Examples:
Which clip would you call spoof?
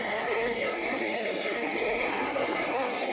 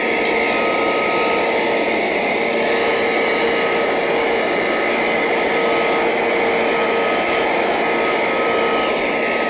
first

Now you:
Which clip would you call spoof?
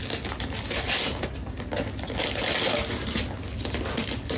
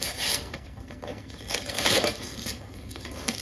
second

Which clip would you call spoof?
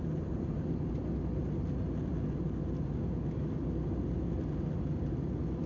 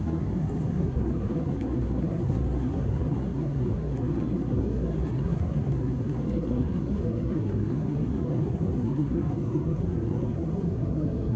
second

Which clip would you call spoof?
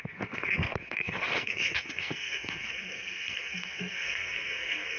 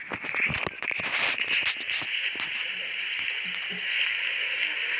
first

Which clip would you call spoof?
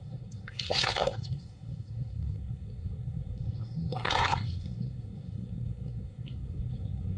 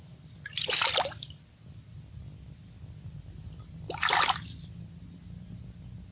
first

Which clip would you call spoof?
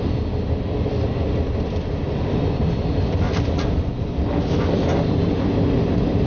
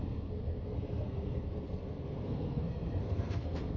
second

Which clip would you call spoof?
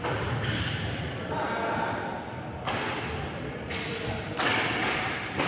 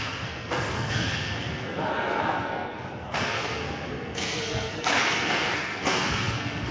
second